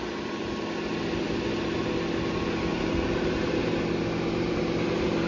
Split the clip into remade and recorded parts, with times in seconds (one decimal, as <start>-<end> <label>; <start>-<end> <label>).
0.0-0.5 remade; 0.5-2.7 recorded; 2.7-3.6 remade; 3.6-5.3 recorded